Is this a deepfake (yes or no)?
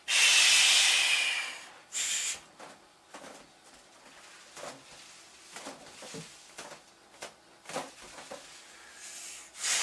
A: no